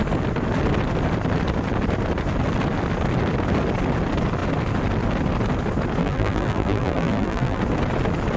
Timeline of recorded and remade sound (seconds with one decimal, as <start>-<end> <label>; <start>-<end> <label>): 0.0-6.0 recorded; 6.0-7.6 remade; 7.6-8.4 recorded